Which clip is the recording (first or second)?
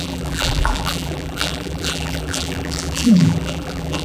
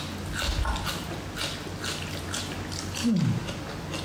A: second